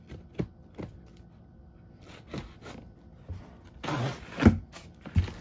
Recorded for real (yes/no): yes